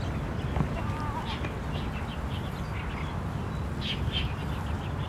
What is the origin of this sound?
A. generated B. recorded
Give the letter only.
B